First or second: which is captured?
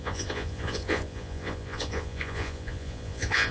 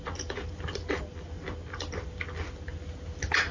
second